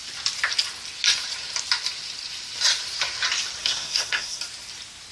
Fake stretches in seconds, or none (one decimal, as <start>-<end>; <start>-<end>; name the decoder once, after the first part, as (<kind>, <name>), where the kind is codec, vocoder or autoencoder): 3.6-4.4 (codec, SNAC)

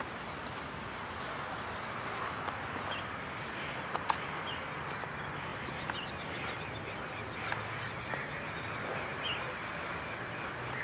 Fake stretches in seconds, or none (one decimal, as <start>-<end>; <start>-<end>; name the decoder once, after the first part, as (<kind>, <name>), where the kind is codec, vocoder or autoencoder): none

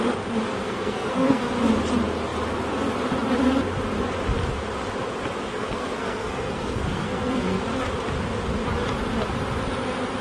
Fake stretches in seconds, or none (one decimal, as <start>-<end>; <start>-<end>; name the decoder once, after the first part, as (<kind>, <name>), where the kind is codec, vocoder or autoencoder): 0.6-1.4 (codec, SNAC); 5.5-7.6

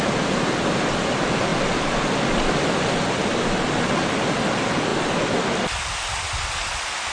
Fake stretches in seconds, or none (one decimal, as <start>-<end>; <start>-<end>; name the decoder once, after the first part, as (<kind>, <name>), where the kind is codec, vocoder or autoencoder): none

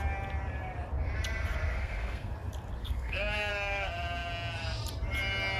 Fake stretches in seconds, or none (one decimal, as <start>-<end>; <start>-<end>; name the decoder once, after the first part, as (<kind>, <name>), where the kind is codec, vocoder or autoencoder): 1.7-2.3 (codec, SNAC); 2.8-3.5